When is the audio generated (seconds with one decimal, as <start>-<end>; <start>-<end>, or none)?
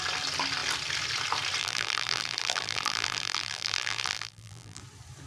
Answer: 1.6-4.8